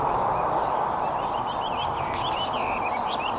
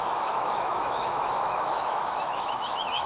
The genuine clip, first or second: first